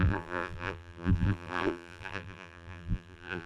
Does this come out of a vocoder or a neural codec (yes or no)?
yes